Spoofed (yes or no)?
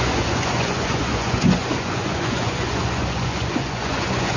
yes